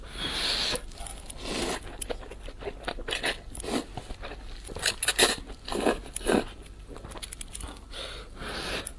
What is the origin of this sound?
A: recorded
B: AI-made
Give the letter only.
A